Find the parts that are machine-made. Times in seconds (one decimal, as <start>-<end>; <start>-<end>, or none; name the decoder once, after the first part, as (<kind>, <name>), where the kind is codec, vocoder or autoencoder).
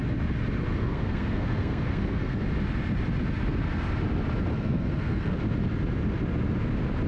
0.8-2.5 (codec, SNAC); 4.5-5.4